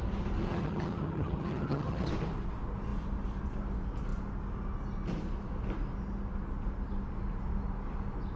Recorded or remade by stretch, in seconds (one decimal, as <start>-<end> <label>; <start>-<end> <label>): 0.0-0.5 recorded; 0.5-2.1 remade; 2.1-8.4 recorded